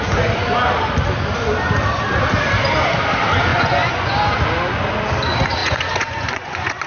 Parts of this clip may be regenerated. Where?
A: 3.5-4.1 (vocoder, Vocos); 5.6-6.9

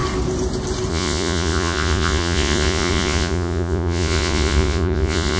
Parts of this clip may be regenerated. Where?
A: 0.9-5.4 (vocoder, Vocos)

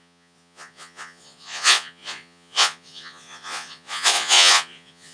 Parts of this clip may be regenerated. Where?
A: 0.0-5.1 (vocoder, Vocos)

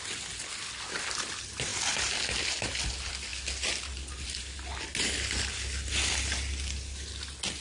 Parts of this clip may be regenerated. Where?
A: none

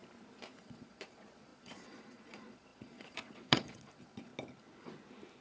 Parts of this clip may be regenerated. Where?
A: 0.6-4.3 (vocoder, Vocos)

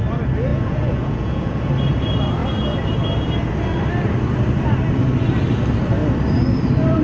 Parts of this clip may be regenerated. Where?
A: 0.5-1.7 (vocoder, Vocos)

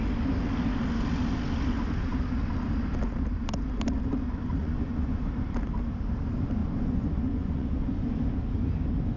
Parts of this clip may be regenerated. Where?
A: 4.6-5.2 (vocoder, Vocos); 6.6-8.0

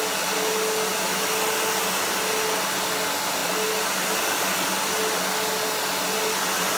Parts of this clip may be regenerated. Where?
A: none